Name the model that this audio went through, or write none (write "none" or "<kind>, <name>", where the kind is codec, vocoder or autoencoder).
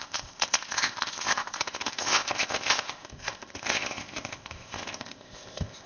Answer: codec, ZipCodec